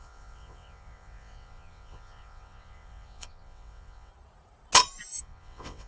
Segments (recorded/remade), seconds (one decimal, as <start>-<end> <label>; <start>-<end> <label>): 0.0-4.1 remade; 4.1-5.2 recorded; 5.2-5.9 remade